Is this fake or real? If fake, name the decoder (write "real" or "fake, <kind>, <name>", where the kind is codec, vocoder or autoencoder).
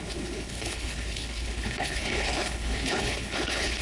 fake, codec, HILCodec